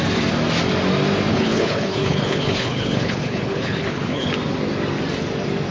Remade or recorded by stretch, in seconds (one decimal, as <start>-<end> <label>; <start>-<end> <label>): 0.0-1.3 recorded; 1.3-4.3 remade; 4.3-5.7 recorded